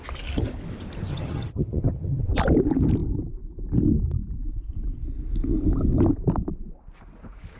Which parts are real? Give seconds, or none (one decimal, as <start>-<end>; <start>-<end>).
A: 0.0-1.1; 2.2-7.6